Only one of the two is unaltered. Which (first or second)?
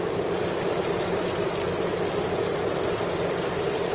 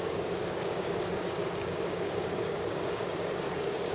first